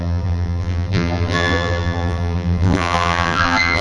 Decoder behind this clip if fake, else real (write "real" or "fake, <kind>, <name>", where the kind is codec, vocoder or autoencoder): fake, vocoder, BigVGAN v2